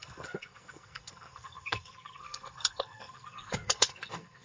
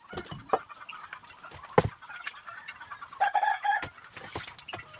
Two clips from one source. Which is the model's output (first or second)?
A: first